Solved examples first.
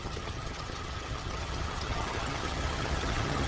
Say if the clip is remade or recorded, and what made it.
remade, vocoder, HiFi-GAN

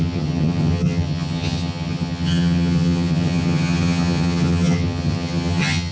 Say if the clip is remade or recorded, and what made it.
remade, vocoder, HiFi-GAN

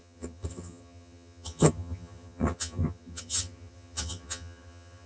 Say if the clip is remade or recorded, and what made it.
remade, vocoder, HiFi-GAN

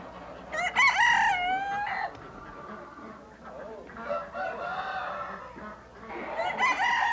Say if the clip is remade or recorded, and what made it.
recorded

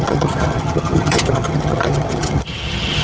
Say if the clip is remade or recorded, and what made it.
remade, vocoder, HiFi-GAN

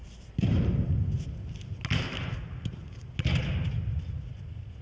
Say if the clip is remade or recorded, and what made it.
recorded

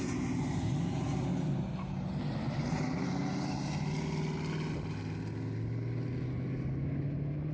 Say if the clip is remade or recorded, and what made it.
recorded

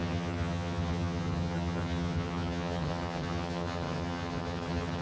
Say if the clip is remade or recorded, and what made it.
remade, vocoder, HiFi-GAN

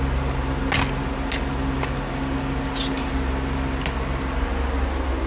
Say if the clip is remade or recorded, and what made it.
recorded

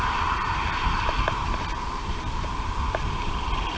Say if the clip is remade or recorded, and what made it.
recorded